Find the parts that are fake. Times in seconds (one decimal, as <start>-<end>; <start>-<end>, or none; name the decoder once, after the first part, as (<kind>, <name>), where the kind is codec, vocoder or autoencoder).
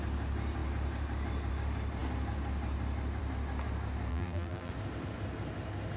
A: 4.1-4.7 (vocoder, BigVGAN v2)